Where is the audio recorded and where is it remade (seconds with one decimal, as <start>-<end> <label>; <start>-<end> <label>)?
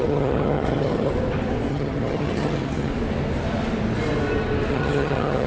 0.0-1.1 remade; 1.1-1.7 recorded; 1.7-2.9 remade; 2.9-4.7 recorded; 4.7-5.5 remade